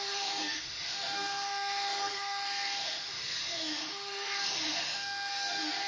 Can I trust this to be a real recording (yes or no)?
no